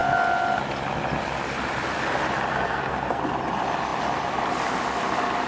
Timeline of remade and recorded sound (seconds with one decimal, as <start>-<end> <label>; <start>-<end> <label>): 0.0-2.5 recorded; 2.5-3.2 remade; 3.2-5.5 recorded